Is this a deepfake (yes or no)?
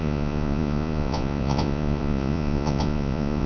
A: yes